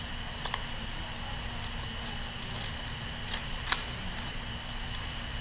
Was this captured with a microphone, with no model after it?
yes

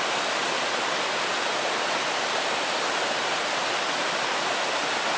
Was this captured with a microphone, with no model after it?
yes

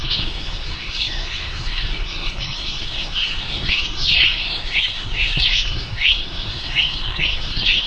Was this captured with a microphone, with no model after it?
no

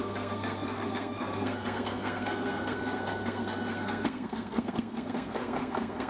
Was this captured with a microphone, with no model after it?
no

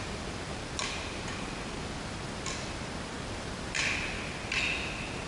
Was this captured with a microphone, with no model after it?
yes